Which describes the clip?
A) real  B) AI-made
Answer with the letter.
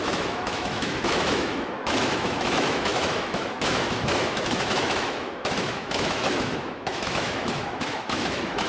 B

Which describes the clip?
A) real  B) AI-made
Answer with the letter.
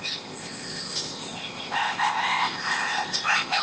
B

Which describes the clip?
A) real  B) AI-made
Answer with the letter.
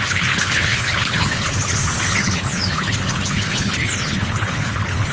B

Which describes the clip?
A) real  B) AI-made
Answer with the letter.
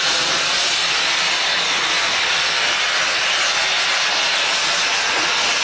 A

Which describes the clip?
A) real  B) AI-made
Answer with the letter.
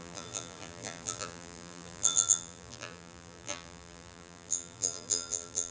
B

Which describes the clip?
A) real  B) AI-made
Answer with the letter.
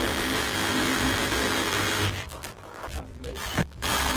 B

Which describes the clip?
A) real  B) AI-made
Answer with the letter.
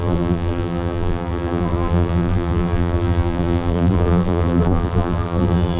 B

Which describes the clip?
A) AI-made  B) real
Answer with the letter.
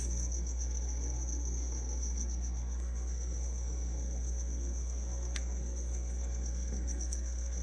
A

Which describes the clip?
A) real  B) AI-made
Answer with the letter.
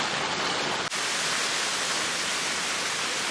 A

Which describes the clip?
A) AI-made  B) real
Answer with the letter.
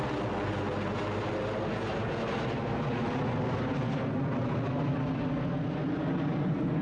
B